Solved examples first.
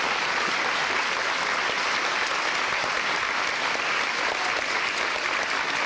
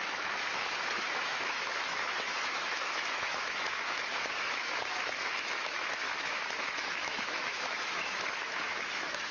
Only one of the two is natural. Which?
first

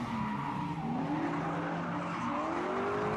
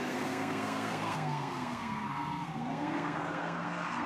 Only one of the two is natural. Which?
first